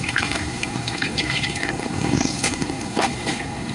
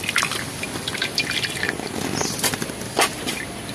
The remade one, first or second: first